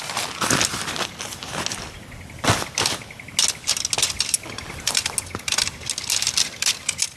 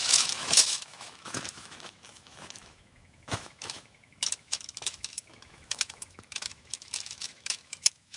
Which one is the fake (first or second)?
second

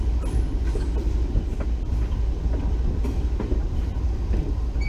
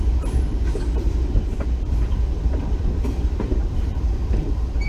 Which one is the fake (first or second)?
second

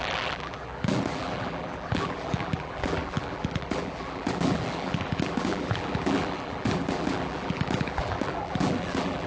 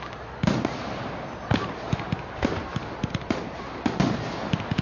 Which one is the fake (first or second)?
first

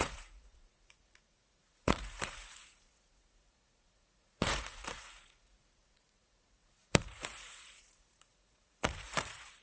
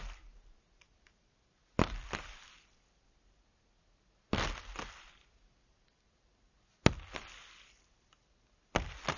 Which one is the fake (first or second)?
first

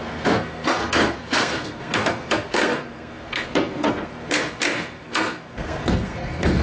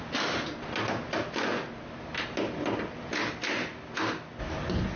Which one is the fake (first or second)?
first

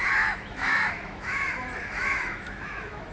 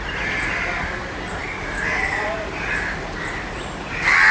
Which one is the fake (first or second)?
first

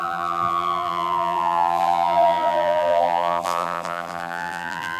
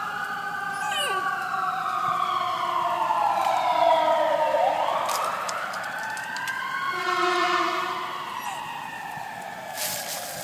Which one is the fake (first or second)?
first